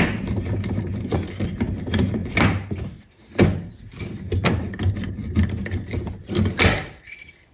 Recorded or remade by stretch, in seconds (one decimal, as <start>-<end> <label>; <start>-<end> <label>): 0.0-7.5 recorded